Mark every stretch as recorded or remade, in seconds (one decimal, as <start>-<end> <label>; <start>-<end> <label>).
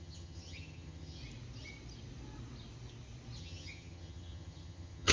0.0-1.2 remade; 1.2-3.4 recorded; 3.4-5.1 remade